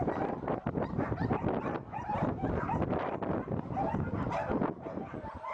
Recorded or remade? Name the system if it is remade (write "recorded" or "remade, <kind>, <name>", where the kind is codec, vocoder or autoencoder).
recorded